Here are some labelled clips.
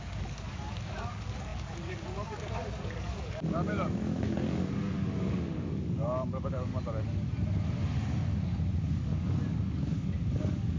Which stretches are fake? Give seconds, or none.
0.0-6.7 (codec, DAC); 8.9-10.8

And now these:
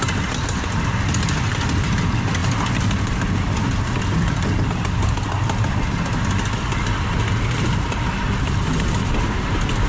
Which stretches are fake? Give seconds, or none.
none

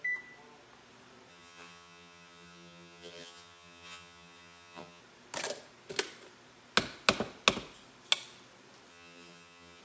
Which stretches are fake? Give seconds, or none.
1.3-5.0 (vocoder, HiFi-GAN); 8.9-9.8

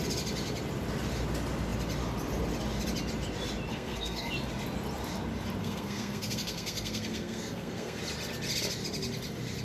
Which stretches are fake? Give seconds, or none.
3.7-4.3 (codec, SNAC); 5.6-8.0

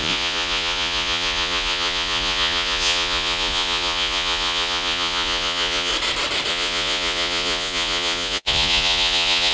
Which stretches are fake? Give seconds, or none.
0.0-5.9 (vocoder, Vocos); 6.5-9.5